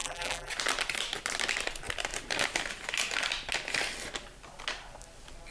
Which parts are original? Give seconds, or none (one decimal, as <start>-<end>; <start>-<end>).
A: 0.5-5.5